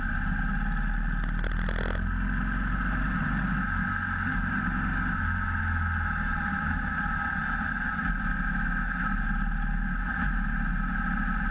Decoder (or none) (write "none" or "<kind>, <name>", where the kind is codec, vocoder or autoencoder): none